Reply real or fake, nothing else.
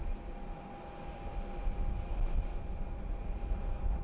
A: real